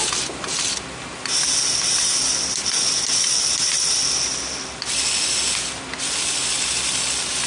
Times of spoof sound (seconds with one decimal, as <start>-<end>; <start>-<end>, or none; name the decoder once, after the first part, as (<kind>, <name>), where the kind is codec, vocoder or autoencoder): none